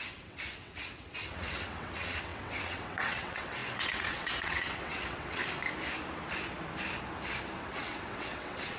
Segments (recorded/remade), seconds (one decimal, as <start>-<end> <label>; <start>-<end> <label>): 0.0-5.4 remade; 5.4-7.6 recorded; 7.6-8.8 remade